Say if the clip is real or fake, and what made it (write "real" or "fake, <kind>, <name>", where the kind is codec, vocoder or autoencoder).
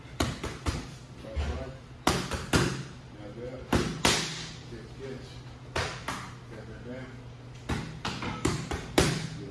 real